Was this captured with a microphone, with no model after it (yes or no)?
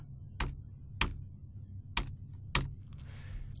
yes